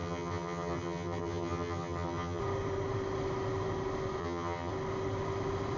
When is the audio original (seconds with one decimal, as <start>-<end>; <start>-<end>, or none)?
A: 2.4-4.2; 4.7-5.8